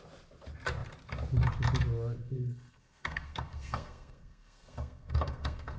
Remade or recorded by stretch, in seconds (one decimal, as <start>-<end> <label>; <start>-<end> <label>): 0.0-2.2 recorded; 2.2-5.8 remade